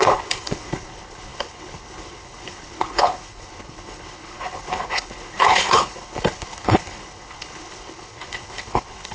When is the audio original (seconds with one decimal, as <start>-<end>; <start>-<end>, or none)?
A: none